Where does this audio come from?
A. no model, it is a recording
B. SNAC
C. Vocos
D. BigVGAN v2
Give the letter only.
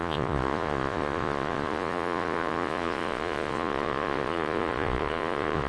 C